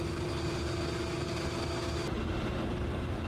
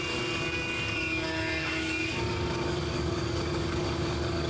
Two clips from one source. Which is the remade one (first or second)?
second